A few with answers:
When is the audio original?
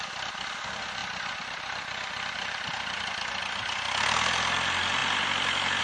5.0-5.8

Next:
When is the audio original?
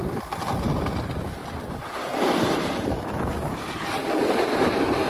none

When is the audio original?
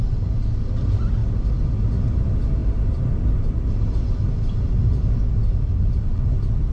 0.0-2.6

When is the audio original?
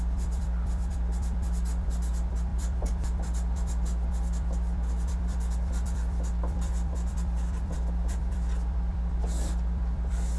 none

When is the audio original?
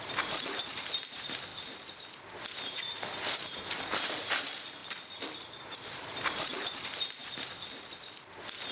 4.8-5.6; 7.2-7.8